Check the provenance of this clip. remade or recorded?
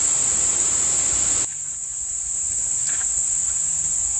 recorded